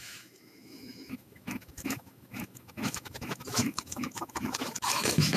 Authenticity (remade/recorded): remade